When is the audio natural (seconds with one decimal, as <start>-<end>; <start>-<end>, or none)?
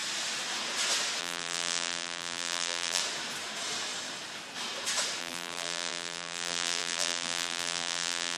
0.0-1.2; 3.0-5.2